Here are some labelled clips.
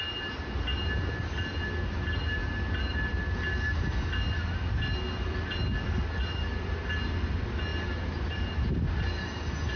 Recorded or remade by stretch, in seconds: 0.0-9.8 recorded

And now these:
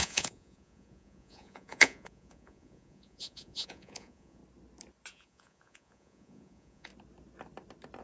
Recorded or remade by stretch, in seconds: 0.0-4.4 remade; 4.4-5.1 recorded; 5.1-6.9 remade; 6.9-8.0 recorded

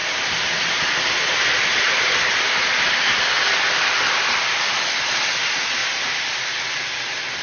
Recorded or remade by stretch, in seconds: 0.0-2.4 remade; 2.4-5.8 recorded; 5.8-6.6 remade; 6.6-7.4 recorded

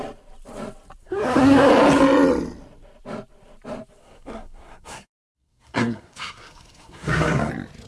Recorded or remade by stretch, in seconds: 0.0-1.0 recorded; 1.0-1.7 remade; 1.7-4.0 recorded; 4.0-7.5 remade; 7.5-7.9 recorded

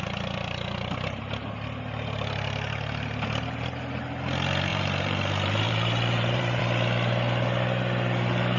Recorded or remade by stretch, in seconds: 0.0-4.7 recorded; 4.7-6.6 remade; 6.6-8.6 recorded

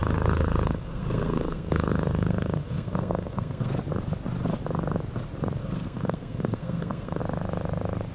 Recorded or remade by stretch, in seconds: 0.0-3.7 remade; 3.7-5.6 recorded; 5.6-7.2 remade; 7.2-8.1 recorded